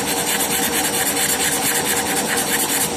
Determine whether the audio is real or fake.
real